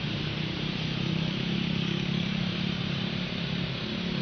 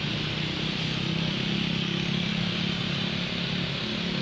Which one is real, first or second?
second